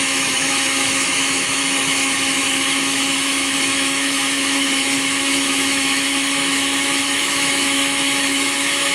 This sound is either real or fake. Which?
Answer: fake